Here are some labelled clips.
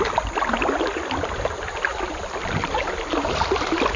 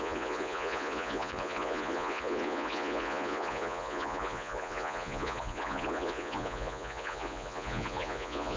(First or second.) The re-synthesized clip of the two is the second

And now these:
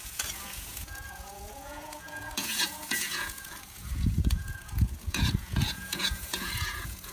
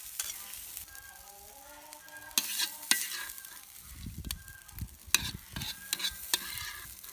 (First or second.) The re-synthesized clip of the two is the first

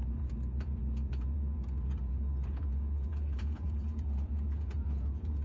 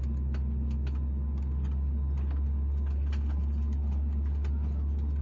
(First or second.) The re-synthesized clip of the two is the first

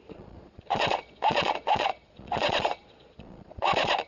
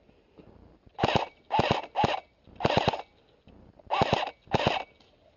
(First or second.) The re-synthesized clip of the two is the first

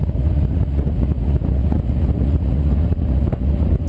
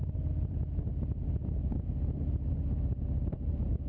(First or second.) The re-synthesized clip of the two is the first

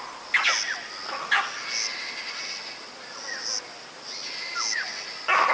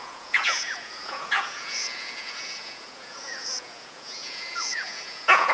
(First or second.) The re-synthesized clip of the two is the second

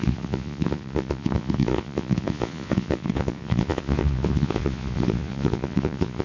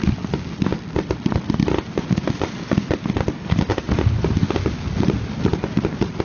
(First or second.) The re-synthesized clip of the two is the first